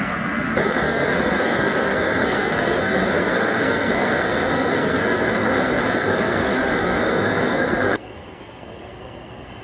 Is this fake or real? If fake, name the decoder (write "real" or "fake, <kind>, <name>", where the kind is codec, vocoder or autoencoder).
fake, codec, SNAC